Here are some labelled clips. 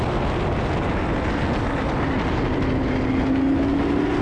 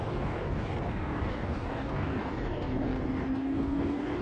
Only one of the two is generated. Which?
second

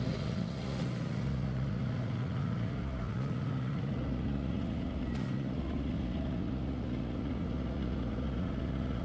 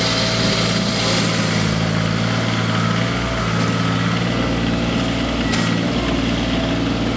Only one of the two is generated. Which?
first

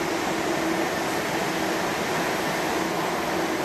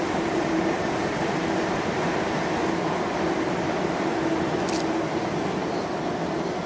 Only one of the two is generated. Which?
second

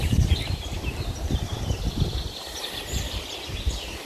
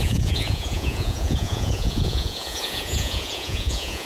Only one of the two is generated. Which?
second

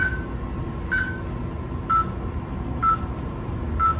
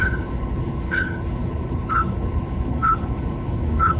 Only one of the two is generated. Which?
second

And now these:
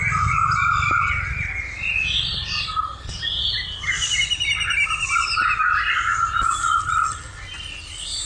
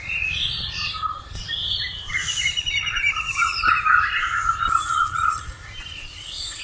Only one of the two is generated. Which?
second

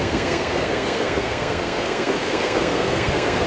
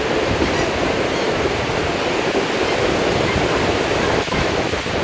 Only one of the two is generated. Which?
first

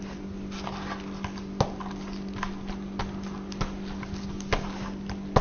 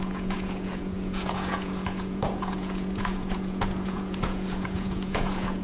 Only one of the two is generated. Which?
second